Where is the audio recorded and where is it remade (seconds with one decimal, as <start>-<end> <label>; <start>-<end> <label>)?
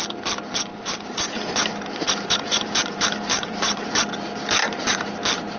0.0-0.7 recorded; 0.7-4.1 remade; 4.1-4.6 recorded; 4.6-5.1 remade; 5.1-5.6 recorded